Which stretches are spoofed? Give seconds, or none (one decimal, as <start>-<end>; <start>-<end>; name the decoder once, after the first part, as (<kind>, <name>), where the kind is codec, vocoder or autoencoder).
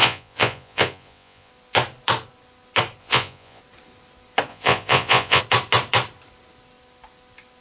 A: 0.0-1.5 (vocoder, Vocos); 3.0-3.6; 4.5-5.4